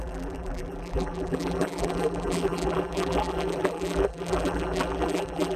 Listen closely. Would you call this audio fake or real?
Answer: fake